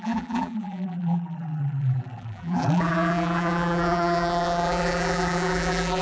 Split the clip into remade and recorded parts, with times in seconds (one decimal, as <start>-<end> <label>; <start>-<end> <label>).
0.0-6.0 remade